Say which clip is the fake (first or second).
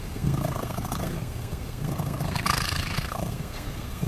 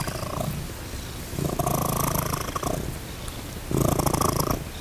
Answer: first